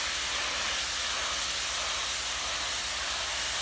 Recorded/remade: recorded